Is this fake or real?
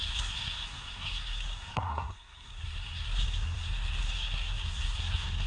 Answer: fake